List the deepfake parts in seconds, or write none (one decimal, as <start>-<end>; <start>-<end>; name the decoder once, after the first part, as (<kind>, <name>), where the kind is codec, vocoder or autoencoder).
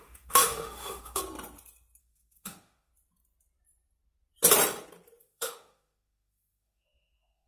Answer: 0.0-1.2 (autoencoder, DAC-VAE); 2.0-2.9; 5.2-7.5